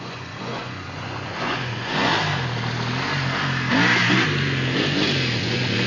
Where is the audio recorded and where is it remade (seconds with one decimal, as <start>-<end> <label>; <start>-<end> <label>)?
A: 0.0-2.1 remade; 2.1-5.4 recorded; 5.4-5.9 remade